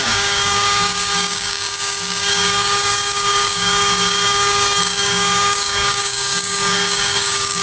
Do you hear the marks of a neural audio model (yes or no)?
yes